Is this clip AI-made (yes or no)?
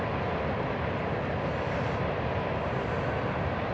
no